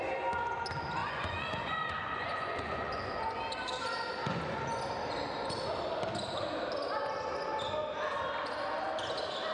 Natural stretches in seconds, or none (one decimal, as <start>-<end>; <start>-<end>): 0.0-1.0; 3.4-4.2; 4.8-9.5